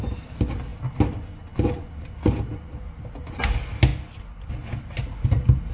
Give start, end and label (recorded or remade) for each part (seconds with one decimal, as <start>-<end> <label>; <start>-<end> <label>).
0.0-5.7 recorded